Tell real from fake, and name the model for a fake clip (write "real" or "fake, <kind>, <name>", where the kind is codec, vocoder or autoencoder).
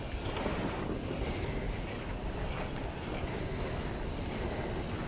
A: real